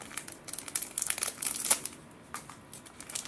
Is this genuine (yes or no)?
yes